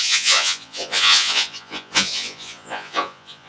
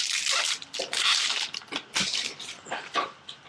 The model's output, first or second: first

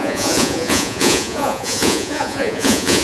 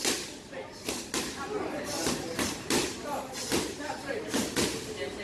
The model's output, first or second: first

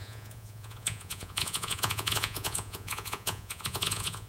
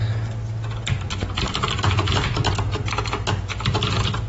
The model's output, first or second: first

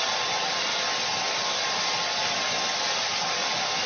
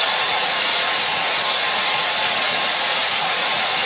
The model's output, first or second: second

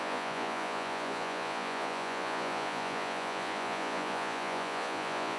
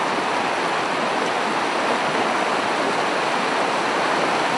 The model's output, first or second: first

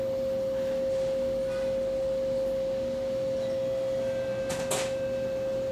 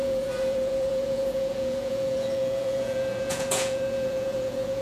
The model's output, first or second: second